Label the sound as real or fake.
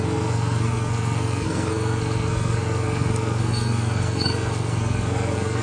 fake